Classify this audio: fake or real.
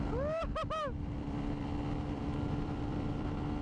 fake